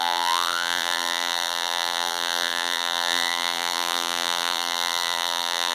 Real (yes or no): no